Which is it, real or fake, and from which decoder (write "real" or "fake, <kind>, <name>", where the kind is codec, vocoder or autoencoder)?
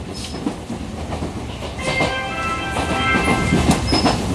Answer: real